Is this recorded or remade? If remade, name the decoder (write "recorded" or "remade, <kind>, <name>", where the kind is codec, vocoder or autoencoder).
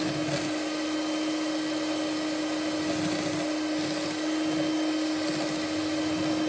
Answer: recorded